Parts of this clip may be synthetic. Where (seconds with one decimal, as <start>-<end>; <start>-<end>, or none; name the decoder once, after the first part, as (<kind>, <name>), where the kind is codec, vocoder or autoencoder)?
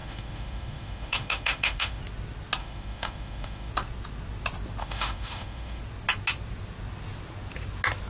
0.0-2.0 (autoencoder, DAC-VAE); 2.6-3.7; 4.8-5.8